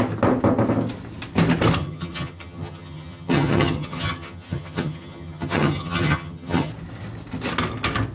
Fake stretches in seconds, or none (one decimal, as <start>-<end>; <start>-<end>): 1.8-6.7